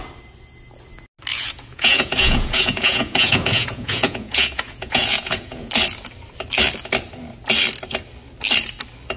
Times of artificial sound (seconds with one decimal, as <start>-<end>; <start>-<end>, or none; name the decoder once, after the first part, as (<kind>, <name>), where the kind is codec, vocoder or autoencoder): 1.3-5.7 (vocoder, Vocos)